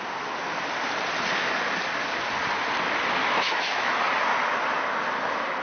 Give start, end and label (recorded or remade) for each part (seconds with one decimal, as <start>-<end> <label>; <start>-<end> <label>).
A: 0.0-3.2 recorded; 3.2-4.0 remade; 4.0-5.6 recorded